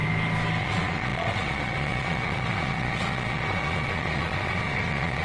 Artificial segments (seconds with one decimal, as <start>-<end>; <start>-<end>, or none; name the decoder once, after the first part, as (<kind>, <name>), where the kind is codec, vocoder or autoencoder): 0.6-5.2 (vocoder, Vocos)